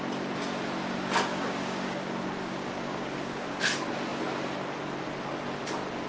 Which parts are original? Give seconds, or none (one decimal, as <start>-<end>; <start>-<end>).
0.0-1.3; 3.6-6.1

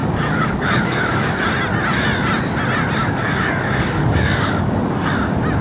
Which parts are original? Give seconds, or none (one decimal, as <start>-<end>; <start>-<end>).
1.4-3.0; 5.1-5.6